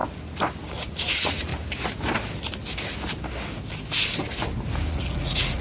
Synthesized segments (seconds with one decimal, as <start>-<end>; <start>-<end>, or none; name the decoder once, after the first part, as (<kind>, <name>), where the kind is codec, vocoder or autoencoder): 0.7-1.5 (vocoder, Vocos); 4.9-5.6